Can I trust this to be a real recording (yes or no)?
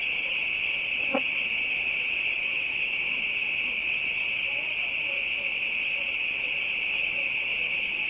no